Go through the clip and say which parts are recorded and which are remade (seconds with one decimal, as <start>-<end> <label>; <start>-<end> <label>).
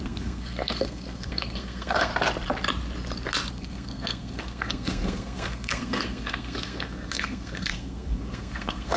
0.0-2.1 remade; 2.1-3.5 recorded; 3.5-9.0 remade